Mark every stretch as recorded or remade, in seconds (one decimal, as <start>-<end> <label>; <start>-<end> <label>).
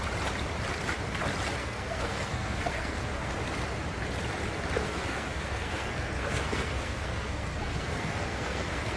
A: 0.0-1.6 recorded; 1.6-3.3 remade; 3.3-4.8 recorded; 4.8-9.0 remade